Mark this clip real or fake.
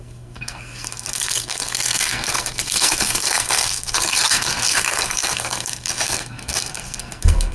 fake